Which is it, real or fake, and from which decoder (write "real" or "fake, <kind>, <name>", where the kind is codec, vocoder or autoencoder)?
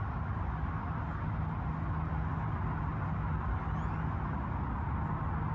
real